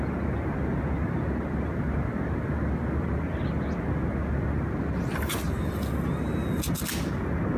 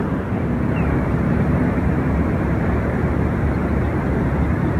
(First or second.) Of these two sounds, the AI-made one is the second